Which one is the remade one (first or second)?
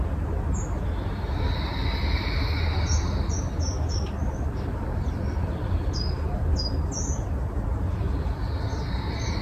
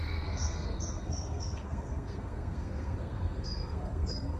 second